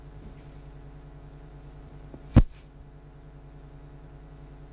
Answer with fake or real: fake